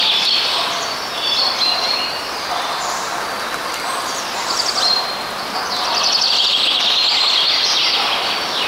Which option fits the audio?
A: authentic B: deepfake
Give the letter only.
A